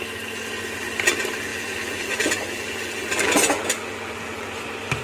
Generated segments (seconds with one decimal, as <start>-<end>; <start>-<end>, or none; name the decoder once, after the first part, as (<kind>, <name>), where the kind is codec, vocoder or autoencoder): 1.5-4.5 (vocoder, BigVGAN v2)